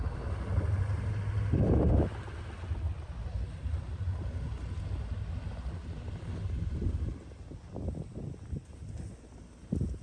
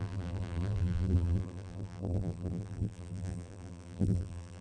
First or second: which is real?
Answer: first